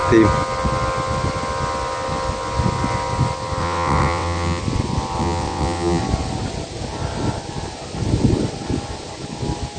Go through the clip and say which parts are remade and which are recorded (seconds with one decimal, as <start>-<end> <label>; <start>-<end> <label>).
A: 0.0-3.6 recorded; 3.6-4.6 remade; 4.6-5.2 recorded; 5.2-6.0 remade; 6.0-9.8 recorded